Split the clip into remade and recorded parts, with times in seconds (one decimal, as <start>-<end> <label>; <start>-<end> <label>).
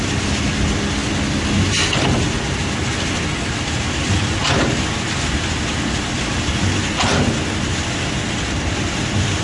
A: 0.0-9.4 recorded